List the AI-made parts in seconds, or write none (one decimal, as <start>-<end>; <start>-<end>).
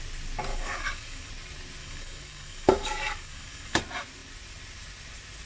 0.5-1.3; 1.8-3.8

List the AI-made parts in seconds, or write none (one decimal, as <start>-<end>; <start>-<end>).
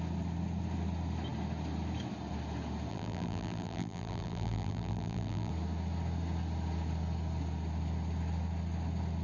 2.9-5.5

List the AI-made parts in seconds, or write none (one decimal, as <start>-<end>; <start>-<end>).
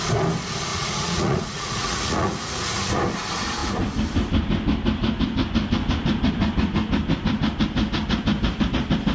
0.7-2.6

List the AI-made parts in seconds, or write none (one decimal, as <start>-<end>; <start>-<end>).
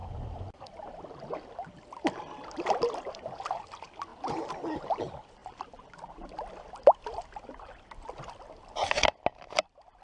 none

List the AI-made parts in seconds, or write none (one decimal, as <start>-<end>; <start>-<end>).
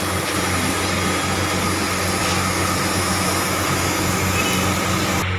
2.2-4.4